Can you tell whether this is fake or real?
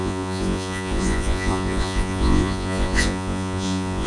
fake